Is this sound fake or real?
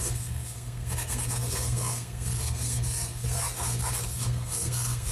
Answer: fake